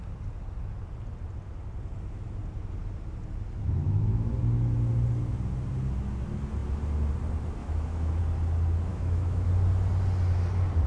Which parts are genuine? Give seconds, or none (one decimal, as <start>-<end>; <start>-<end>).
0.0-3.8; 4.3-7.6; 8.2-8.9; 9.5-10.9